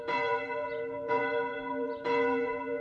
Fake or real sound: fake